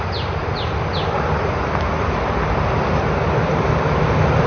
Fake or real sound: real